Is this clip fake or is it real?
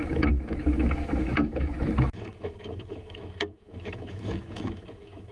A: fake